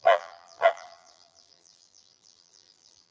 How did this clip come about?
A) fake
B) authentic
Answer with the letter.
A